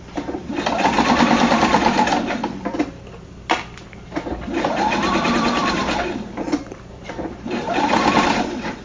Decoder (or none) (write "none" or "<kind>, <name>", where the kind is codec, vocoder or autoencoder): vocoder, BigVGAN v2